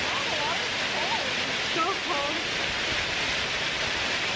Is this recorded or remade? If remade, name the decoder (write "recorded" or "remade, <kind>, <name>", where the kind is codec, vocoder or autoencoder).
recorded